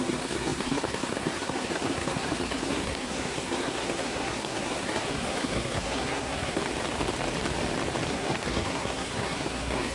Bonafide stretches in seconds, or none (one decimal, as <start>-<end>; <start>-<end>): 6.6-8.1

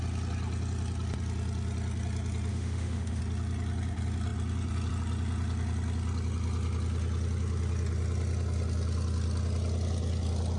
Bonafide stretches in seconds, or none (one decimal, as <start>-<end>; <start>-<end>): 0.0-2.5; 3.2-10.6

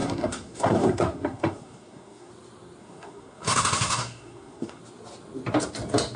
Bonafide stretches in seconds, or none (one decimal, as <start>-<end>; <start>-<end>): 2.3-2.8; 4.8-6.2